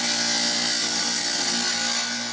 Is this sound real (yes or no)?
yes